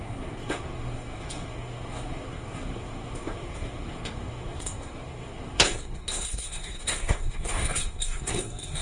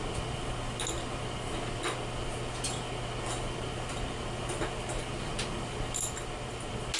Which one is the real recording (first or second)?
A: second